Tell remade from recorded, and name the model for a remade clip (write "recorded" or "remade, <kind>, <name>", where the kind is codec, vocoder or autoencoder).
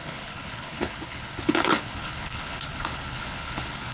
remade, codec, HILCodec